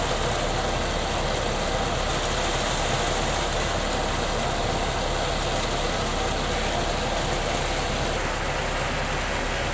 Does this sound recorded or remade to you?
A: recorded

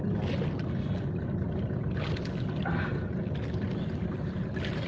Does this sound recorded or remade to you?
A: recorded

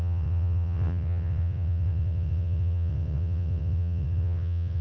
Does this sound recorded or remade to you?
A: remade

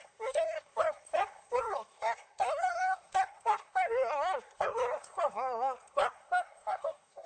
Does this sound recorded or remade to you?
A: remade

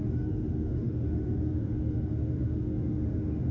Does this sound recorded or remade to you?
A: remade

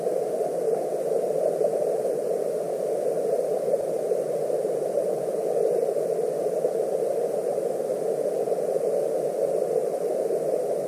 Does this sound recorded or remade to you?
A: recorded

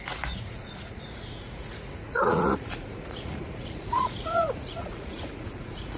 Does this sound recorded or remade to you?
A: remade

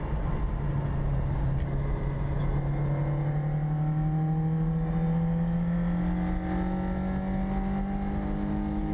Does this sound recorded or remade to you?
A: recorded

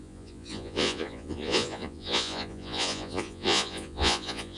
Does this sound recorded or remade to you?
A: remade